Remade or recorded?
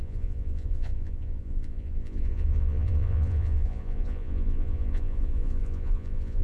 remade